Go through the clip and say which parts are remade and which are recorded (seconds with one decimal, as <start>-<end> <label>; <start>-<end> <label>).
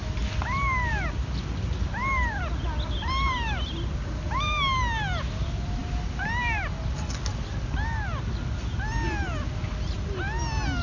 0.0-10.8 recorded